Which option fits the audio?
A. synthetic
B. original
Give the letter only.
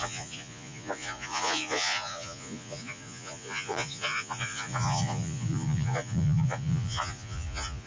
A